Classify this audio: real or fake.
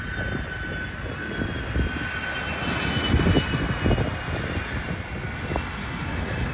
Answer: real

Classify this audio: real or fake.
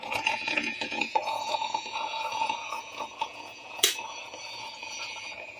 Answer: fake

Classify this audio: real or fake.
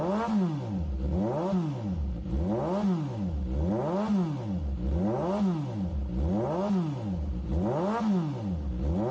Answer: real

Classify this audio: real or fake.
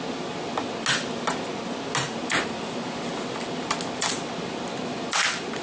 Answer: real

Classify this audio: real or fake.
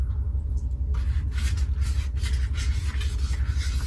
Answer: real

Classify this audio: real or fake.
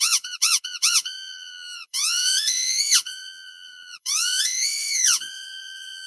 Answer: fake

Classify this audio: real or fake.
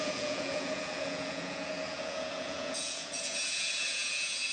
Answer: fake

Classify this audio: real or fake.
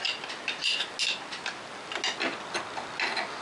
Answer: real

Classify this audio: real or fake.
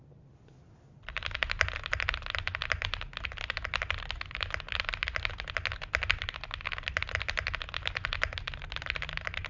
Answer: real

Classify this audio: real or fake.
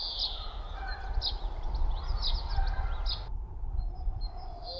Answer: real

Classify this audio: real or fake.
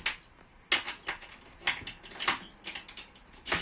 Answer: real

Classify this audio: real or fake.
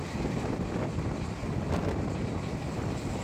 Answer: real